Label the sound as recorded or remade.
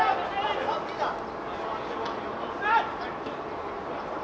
recorded